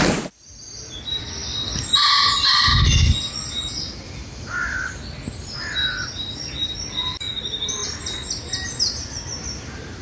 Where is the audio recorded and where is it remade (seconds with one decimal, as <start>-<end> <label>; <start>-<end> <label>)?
0.0-10.0 recorded